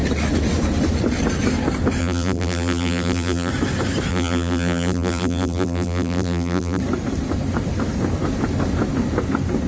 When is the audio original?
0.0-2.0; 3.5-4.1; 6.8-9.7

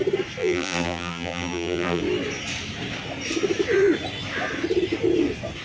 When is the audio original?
0.0-0.4; 2.0-5.6

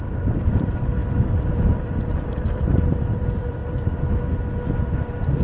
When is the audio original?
none

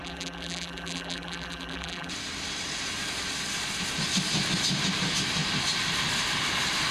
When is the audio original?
2.1-6.9

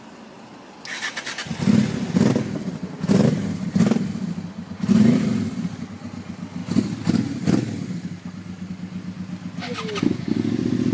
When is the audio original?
0.0-10.9

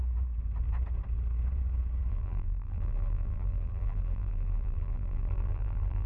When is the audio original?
0.0-2.1

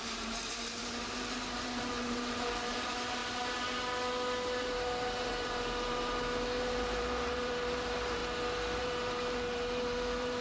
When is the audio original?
3.2-4.6; 8.2-8.8